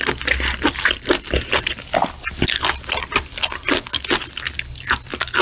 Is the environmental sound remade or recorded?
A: recorded